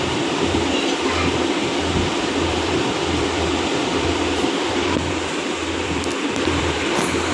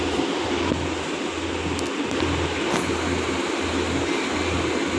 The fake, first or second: first